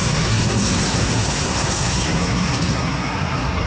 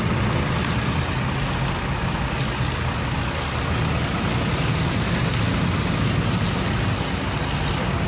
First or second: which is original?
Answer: second